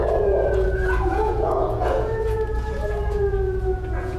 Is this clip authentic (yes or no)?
no